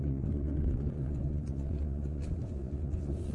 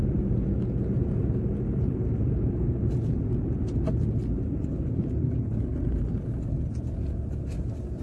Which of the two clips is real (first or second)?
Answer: second